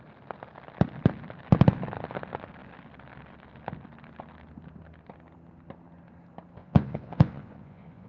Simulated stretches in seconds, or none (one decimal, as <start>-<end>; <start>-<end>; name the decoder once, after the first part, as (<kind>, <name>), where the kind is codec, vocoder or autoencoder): 6.6-8.1 (vocoder, Vocos)